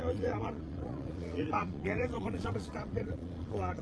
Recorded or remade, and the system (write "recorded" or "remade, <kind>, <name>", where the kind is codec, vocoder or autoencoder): remade, vocoder, Vocos